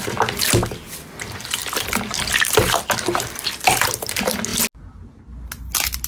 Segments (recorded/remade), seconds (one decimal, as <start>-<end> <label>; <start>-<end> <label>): 0.0-6.1 recorded